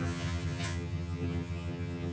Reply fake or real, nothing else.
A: fake